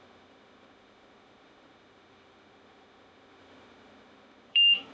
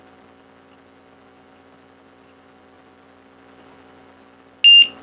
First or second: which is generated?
first